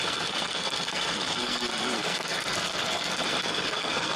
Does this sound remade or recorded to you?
remade